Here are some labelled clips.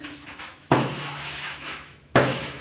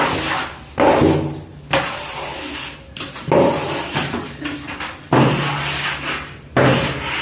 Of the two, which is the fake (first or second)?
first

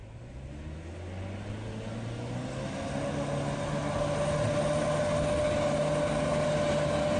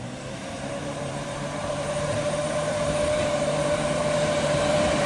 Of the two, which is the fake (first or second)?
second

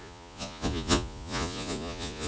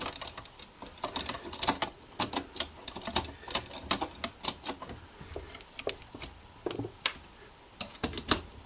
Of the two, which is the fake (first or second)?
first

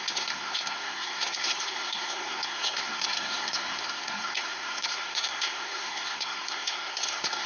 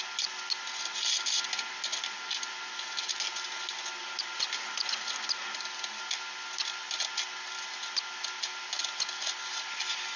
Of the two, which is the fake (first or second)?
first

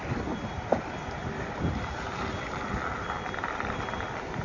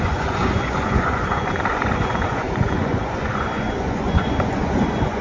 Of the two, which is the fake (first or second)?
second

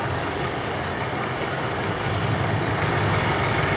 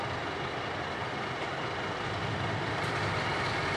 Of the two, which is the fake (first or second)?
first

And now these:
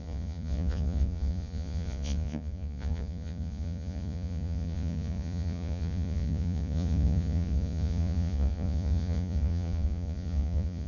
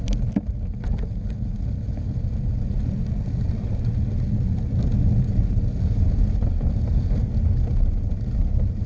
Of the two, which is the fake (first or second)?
first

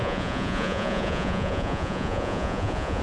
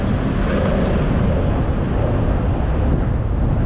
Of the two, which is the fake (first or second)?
first